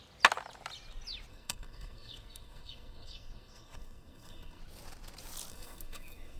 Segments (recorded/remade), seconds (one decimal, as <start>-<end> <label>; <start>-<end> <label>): 0.0-1.3 recorded; 1.3-4.6 remade; 4.6-5.5 recorded; 5.5-6.4 remade